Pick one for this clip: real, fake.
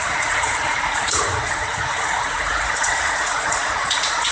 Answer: fake